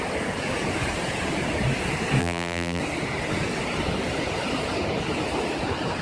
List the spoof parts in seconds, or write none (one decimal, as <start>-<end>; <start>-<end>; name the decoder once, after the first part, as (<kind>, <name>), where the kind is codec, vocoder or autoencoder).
2.2-2.8 (vocoder, BigVGAN v2)